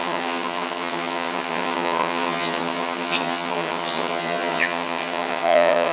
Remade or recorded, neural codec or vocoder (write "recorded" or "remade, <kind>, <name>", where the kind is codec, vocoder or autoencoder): remade, vocoder, HiFi-GAN